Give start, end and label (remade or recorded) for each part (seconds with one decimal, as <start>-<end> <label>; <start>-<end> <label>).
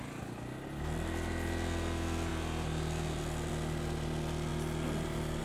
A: 0.0-5.4 recorded